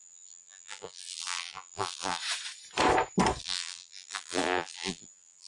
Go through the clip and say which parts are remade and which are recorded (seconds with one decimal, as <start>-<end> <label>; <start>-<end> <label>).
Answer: 0.0-2.2 remade; 2.2-3.4 recorded; 3.4-5.5 remade